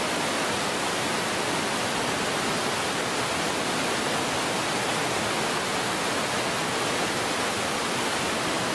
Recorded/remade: recorded